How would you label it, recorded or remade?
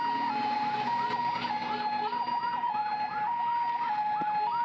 recorded